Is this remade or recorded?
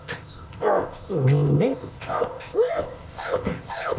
remade